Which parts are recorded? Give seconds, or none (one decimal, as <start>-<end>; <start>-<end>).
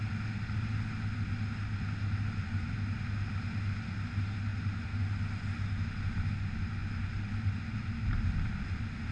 0.0-9.1